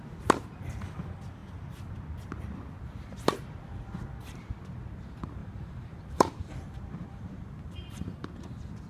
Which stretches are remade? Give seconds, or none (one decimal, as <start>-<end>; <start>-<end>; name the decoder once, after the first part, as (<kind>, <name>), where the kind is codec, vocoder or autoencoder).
5.4-8.3 (vocoder, BigVGAN v2)